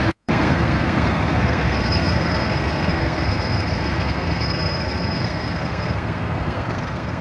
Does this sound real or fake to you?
fake